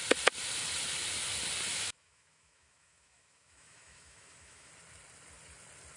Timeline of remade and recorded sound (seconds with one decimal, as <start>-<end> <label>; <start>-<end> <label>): 0.0-1.7 recorded; 1.7-4.7 remade; 4.7-6.0 recorded